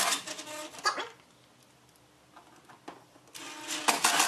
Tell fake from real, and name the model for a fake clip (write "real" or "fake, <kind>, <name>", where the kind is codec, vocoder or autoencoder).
real